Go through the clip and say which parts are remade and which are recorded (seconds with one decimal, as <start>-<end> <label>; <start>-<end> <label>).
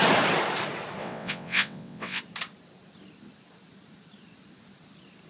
0.0-1.0 recorded; 1.0-2.2 remade; 2.2-5.3 recorded